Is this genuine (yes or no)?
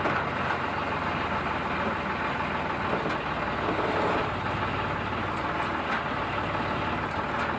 yes